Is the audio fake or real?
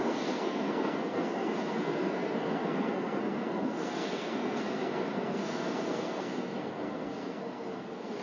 fake